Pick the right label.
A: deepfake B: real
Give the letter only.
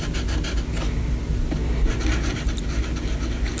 B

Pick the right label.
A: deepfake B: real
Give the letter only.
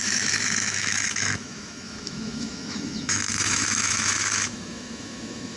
A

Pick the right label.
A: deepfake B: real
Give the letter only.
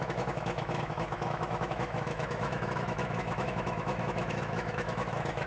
A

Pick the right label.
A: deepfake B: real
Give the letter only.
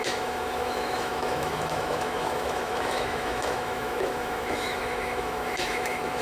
A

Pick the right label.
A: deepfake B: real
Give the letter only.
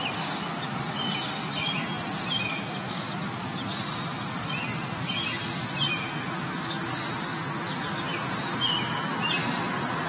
B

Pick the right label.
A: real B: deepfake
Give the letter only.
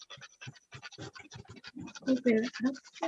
A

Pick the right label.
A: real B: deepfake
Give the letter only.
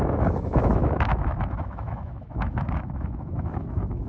B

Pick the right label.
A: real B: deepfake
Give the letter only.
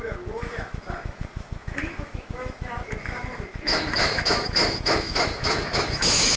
B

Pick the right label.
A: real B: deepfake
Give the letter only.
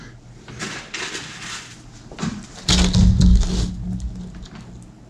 A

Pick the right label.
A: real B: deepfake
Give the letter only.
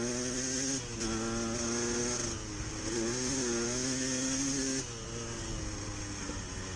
A